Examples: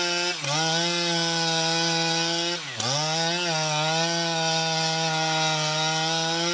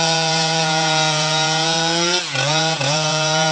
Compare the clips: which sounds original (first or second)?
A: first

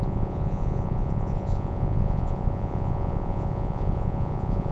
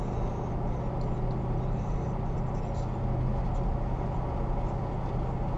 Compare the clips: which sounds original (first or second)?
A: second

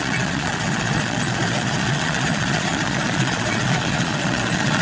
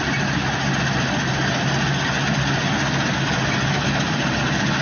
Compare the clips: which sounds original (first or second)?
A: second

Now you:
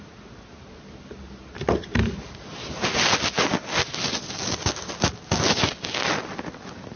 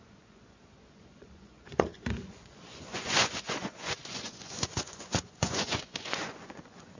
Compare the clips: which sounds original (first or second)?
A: first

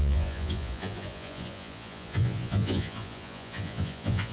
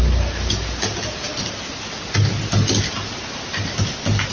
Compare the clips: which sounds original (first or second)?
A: second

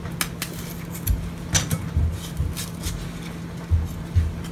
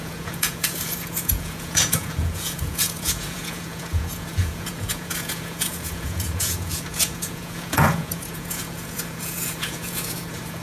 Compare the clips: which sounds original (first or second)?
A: first